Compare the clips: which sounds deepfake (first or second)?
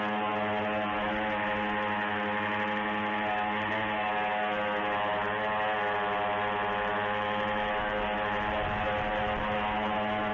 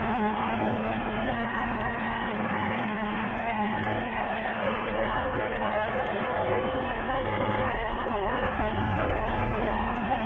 second